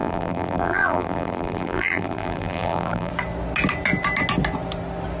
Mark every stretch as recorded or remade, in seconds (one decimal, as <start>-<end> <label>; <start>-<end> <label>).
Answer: 0.0-3.1 remade; 3.1-5.2 recorded